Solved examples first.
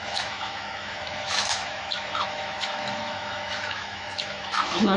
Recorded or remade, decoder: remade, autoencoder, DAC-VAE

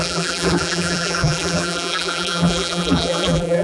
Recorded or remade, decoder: remade, vocoder, BigVGAN v2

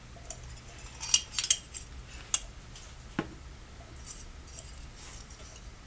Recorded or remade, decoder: recorded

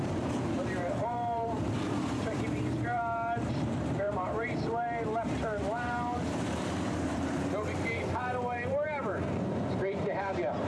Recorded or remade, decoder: remade, vocoder, BigVGAN v2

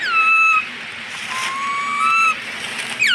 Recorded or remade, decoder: recorded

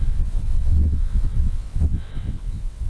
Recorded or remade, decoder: remade, vocoder, WaveNeXt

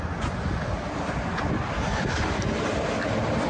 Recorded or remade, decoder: recorded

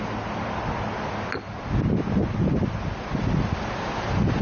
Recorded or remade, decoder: recorded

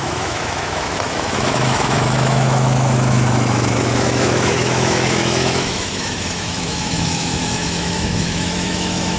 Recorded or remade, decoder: remade, autoencoder, DAC-VAE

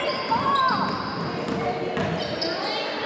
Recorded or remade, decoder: recorded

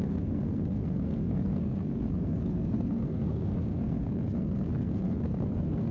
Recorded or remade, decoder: remade, codec, SNAC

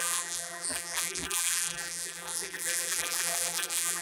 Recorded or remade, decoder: remade, vocoder, BigVGAN v2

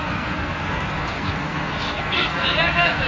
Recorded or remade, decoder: remade, codec, SNAC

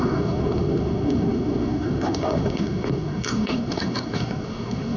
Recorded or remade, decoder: remade, codec, SNAC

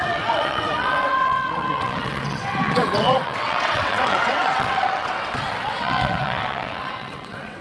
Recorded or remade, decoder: remade, vocoder, WaveNeXt